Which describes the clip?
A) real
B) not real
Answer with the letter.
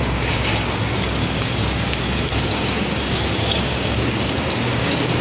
B